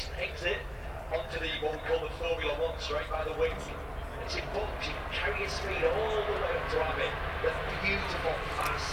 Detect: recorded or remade recorded